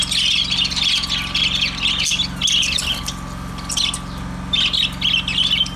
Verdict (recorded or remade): recorded